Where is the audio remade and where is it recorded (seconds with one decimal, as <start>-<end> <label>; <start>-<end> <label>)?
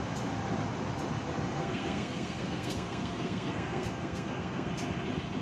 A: 0.0-1.5 recorded; 1.5-4.7 remade; 4.7-5.4 recorded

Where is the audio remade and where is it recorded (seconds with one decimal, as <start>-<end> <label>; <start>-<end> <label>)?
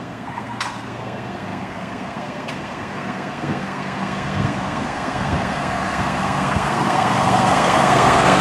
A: 0.0-8.4 remade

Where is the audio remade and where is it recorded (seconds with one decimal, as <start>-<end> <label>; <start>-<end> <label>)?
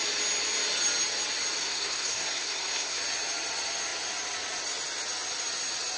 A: 0.0-1.6 recorded; 1.6-3.0 remade; 3.0-6.0 recorded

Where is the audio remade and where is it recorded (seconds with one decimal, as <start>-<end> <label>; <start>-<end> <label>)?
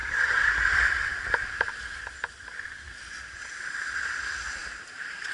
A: 0.0-0.5 remade; 0.5-5.3 recorded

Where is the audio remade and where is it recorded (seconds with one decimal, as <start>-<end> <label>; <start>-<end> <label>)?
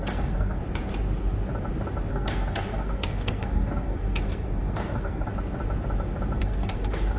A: 0.0-0.6 remade; 0.6-2.1 recorded; 2.1-5.3 remade; 5.3-6.4 recorded; 6.4-7.2 remade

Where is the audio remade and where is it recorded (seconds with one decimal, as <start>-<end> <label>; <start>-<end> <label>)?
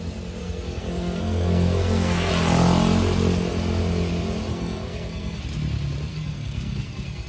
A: 0.0-0.4 recorded; 0.4-2.3 remade; 2.3-4.5 recorded; 4.5-5.4 remade; 5.4-6.1 recorded; 6.1-7.3 remade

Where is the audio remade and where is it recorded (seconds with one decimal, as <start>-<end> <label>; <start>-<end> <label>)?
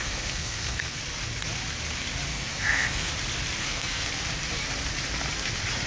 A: 0.0-1.0 remade; 1.0-2.3 recorded; 2.3-3.1 remade; 3.1-3.6 recorded; 3.6-4.1 remade; 4.1-5.9 recorded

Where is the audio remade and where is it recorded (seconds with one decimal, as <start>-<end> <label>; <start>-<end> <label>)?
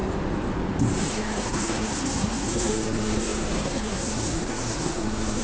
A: 0.0-1.1 recorded; 1.1-5.4 remade